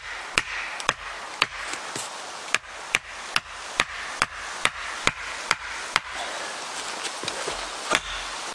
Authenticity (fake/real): real